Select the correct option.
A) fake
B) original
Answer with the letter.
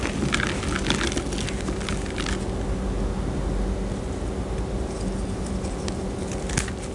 B